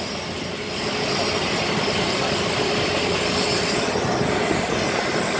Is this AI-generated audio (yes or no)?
no